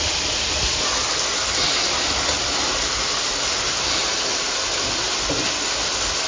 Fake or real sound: real